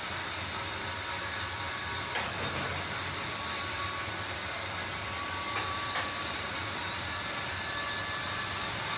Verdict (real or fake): real